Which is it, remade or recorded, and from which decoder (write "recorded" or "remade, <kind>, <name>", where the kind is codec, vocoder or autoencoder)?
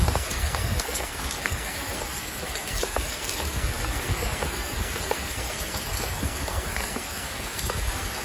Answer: remade, codec, SNAC